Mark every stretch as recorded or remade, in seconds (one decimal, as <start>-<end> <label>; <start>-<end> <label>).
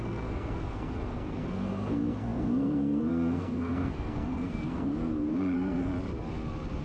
0.0-5.9 remade; 5.9-6.8 recorded